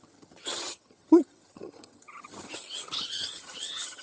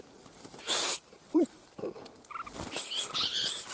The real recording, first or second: second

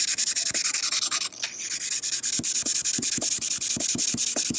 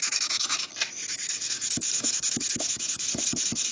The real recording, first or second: first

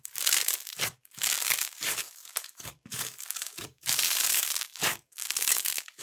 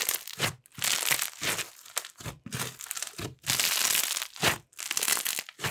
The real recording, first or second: second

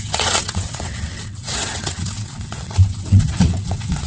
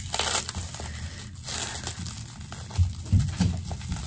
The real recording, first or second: second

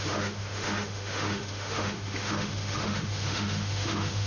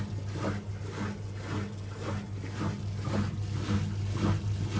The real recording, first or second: second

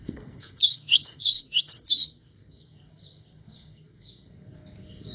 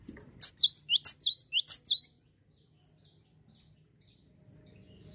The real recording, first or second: second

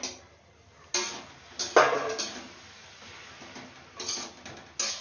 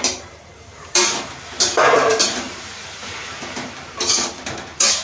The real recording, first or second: first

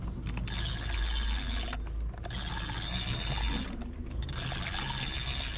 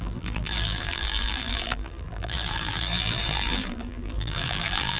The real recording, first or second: first